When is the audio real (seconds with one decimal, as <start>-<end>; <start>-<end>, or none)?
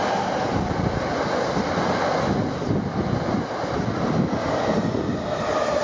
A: 0.0-5.8